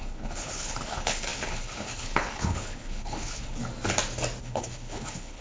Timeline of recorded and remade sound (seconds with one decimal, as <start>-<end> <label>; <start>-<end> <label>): 0.0-3.6 remade; 3.6-4.4 recorded; 4.4-5.4 remade